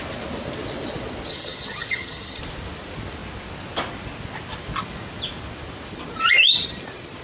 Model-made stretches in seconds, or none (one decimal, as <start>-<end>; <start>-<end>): 1.3-2.4